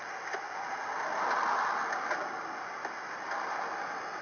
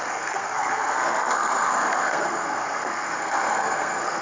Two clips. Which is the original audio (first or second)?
first